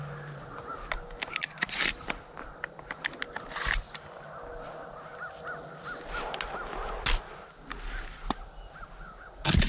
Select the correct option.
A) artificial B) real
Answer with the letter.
B